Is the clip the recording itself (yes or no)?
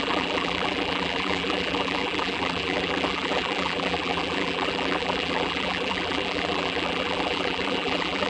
no